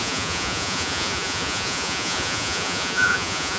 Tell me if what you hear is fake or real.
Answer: fake